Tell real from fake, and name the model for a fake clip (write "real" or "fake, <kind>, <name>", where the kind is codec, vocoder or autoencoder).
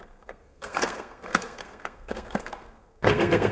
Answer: fake, codec, SNAC